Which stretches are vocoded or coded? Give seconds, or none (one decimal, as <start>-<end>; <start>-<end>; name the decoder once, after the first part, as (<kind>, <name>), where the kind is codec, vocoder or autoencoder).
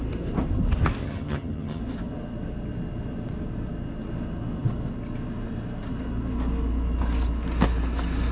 1.0-1.8 (vocoder, HiFi-GAN)